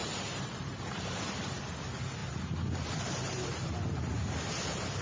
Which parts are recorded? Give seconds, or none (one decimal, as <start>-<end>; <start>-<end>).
1.2-5.0